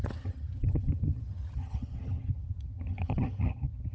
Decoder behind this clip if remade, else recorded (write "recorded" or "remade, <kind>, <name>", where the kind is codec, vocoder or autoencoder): remade, vocoder, HiFi-GAN